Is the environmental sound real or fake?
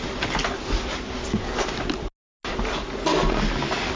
real